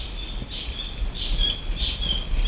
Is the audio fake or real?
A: real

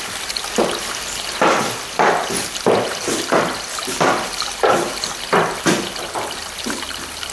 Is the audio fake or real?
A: real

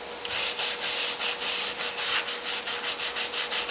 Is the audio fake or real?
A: real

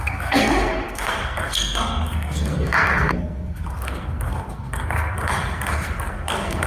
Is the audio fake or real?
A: fake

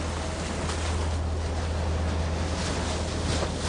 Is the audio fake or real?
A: real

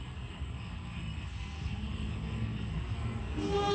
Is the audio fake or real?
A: fake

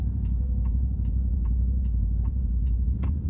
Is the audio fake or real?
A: fake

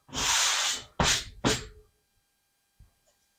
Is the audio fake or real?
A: real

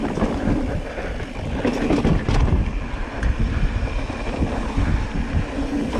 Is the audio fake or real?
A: real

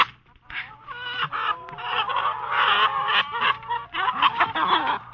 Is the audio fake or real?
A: real